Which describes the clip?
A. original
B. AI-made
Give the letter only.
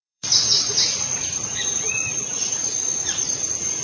B